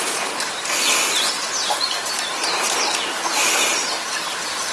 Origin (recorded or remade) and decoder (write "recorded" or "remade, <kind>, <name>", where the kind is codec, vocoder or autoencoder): recorded